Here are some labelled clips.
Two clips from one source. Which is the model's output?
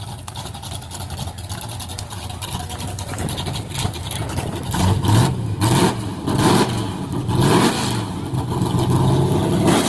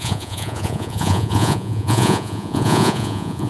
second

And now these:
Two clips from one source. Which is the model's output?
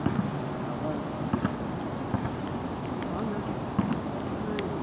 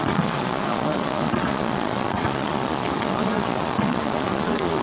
second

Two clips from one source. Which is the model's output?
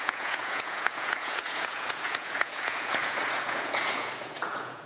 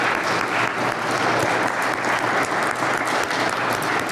first